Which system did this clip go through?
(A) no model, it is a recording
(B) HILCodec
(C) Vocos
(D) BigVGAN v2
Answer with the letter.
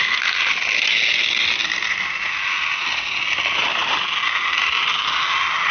A